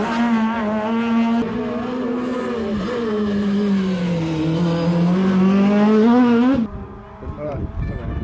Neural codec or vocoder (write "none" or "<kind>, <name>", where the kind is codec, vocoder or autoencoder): none